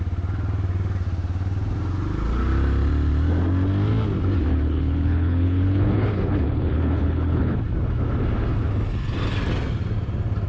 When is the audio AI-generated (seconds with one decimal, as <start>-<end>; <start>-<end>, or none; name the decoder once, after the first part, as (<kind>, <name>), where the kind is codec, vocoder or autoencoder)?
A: 4.5-7.6 (codec, HILCodec)